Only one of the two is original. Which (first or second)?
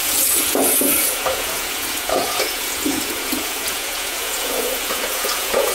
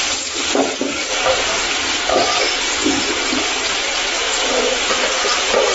second